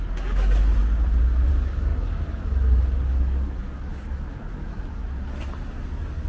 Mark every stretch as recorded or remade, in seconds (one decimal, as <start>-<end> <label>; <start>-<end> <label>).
0.0-0.8 remade; 0.8-1.5 recorded; 1.5-5.0 remade; 5.0-5.8 recorded; 5.8-6.3 remade